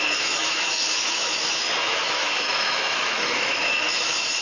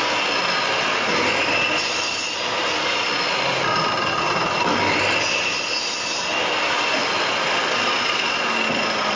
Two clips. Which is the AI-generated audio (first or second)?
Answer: first